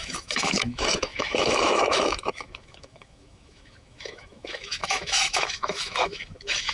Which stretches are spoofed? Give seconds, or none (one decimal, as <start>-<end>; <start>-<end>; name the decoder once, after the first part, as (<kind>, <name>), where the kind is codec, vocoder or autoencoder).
0.0-6.7 (autoencoder, DAC-VAE)